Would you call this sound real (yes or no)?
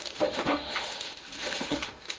no